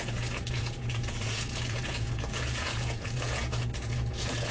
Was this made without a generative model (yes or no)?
no